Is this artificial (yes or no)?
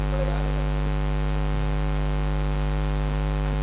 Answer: no